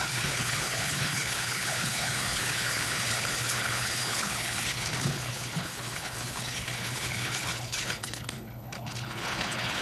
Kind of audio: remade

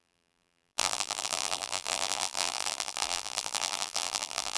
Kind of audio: remade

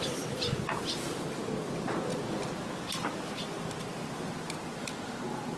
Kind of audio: recorded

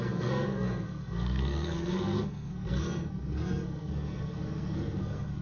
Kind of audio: remade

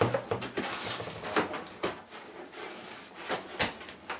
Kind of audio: recorded